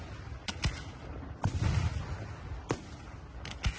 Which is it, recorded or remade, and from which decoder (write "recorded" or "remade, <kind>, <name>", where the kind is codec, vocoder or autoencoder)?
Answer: recorded